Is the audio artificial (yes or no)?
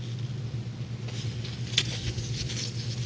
no